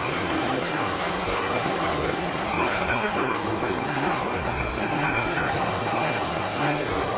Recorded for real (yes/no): no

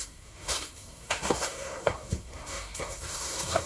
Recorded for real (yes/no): no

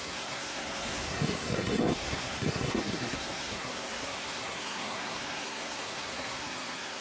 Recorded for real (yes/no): no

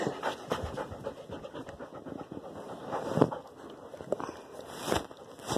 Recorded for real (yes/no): yes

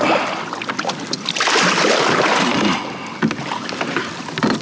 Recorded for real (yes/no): yes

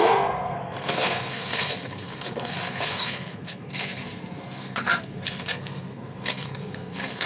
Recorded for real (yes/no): no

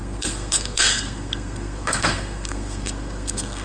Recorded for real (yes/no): no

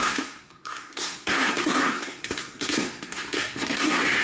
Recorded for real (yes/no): no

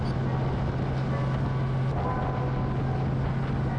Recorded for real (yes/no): yes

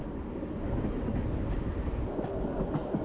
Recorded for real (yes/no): yes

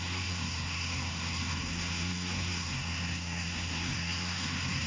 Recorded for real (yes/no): no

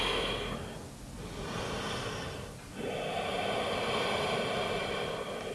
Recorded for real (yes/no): yes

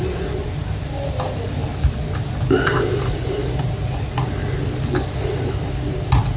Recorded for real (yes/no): yes